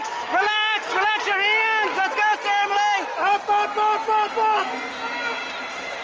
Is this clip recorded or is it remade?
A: recorded